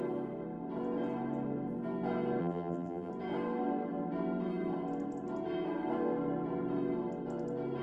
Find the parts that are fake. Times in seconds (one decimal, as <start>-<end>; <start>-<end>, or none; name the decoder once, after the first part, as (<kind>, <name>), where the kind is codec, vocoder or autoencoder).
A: 2.4-3.1 (vocoder, BigVGAN v2)